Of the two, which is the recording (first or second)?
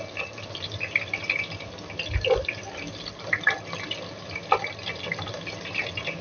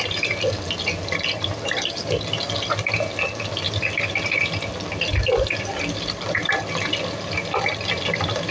first